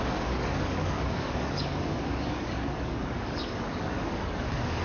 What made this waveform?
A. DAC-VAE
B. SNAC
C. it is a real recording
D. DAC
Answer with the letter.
D